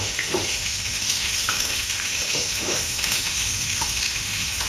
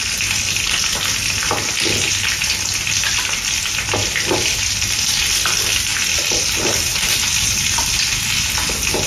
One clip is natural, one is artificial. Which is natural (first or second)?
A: second